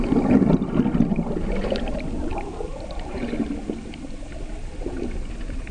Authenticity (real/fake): real